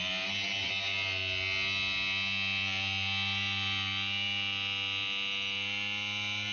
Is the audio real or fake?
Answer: real